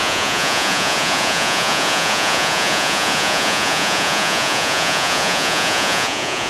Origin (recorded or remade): remade